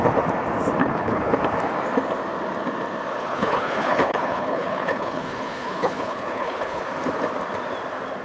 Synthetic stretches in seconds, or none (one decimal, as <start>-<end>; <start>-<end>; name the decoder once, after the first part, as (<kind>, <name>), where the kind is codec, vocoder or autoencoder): 0.8-1.4 (codec, HILCodec); 3.2-6.8